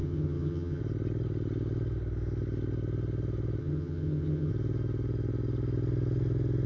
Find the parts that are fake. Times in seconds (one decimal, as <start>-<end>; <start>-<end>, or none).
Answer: 0.0-0.8; 3.6-4.5